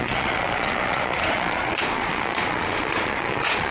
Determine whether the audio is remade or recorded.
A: remade